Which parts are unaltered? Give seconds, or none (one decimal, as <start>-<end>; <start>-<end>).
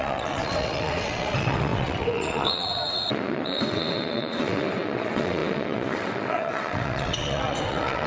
none